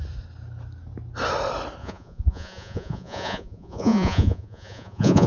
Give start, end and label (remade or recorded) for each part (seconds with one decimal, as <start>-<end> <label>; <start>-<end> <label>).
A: 0.0-1.8 recorded; 1.8-5.3 remade

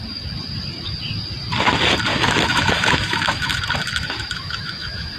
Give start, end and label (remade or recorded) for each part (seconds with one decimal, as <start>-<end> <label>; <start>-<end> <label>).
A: 0.0-2.1 recorded; 2.1-3.6 remade; 3.6-4.0 recorded; 4.0-5.2 remade

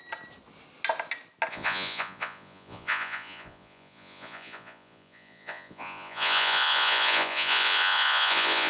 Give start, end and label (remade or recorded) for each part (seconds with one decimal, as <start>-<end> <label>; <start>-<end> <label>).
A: 0.0-1.5 recorded; 1.5-8.7 remade

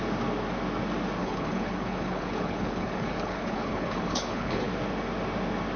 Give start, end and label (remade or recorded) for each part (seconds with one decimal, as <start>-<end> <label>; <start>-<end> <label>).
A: 0.0-1.2 recorded; 1.2-4.7 remade; 4.7-5.8 recorded

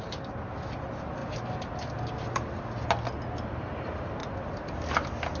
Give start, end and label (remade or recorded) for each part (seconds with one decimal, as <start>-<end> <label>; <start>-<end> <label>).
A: 0.0-5.4 recorded